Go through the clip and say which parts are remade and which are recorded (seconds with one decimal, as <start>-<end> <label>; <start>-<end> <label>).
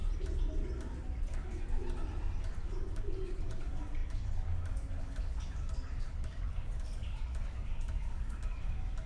0.0-1.3 recorded; 1.3-1.8 remade; 1.8-2.6 recorded; 2.6-9.1 remade